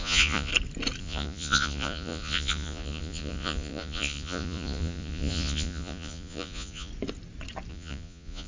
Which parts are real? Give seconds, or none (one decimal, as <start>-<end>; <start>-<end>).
0.5-1.0; 6.9-7.7